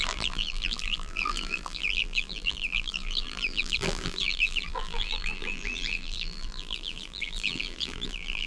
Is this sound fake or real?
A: fake